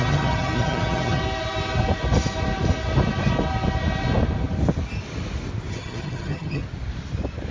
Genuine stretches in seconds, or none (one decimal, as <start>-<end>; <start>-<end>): 1.2-5.7; 6.6-7.5